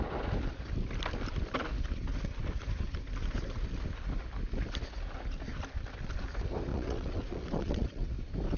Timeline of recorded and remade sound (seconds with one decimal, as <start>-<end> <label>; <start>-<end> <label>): 0.0-6.7 recorded; 6.7-8.1 remade; 8.1-8.6 recorded